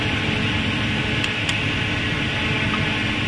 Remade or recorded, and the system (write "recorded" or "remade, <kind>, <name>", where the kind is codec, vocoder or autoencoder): recorded